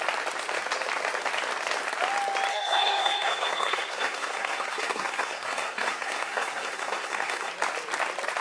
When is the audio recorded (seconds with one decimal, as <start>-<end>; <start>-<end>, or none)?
0.0-2.5; 7.5-8.4